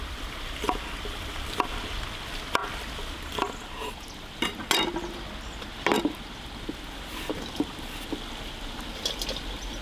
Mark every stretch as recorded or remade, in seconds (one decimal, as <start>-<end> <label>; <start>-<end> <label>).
0.0-9.8 recorded